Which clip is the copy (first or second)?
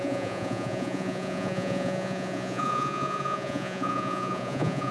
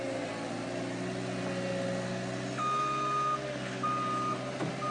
first